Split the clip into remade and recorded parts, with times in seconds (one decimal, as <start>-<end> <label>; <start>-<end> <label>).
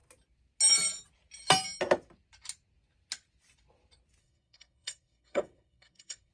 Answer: 0.0-4.2 recorded; 4.2-6.3 remade